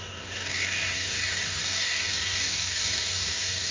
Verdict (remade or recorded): remade